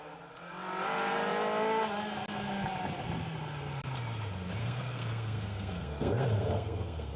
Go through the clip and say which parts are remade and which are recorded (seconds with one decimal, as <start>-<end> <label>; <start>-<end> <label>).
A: 0.0-4.6 recorded; 4.6-7.2 remade